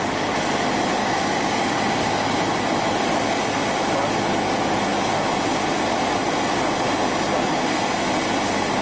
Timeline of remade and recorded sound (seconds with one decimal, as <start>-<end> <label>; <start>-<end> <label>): 0.0-1.0 recorded; 1.0-2.4 remade; 2.4-8.8 recorded